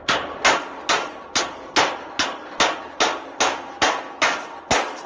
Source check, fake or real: real